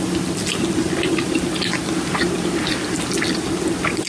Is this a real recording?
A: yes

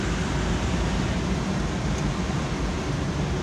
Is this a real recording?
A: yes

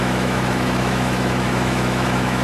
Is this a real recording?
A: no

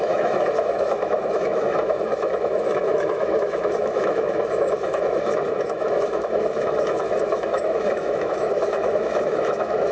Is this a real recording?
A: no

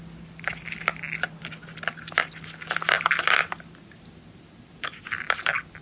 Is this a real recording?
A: yes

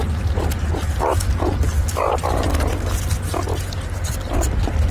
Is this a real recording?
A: yes